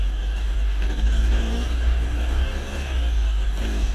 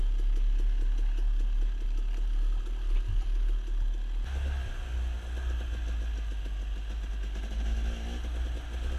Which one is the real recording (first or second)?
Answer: second